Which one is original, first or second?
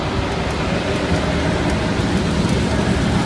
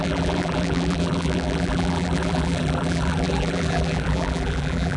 first